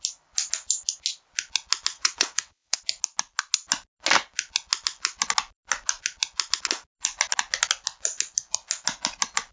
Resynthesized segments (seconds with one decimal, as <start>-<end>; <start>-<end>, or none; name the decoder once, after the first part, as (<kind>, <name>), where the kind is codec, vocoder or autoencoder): 1.9-2.8 (vocoder, WaveNeXt)